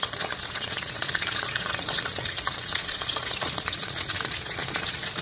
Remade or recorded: remade